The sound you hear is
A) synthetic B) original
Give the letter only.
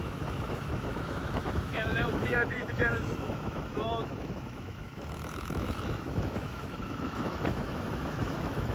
A